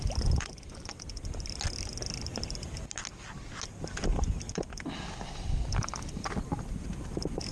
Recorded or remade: recorded